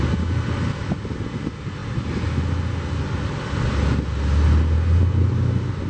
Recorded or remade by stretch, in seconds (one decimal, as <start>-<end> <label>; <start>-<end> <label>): 0.0-5.9 recorded